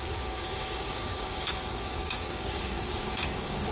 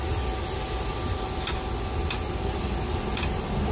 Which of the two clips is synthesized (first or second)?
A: first